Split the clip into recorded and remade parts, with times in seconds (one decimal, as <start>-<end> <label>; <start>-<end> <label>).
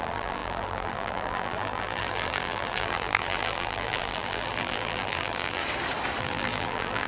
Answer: 0.0-5.6 remade; 5.6-6.2 recorded; 6.2-7.1 remade